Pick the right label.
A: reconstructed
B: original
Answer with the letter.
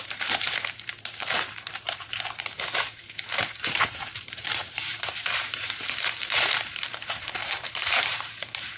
A